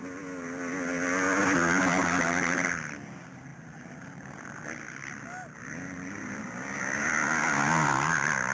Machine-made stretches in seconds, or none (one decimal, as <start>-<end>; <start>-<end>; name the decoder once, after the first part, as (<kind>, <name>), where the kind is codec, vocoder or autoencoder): none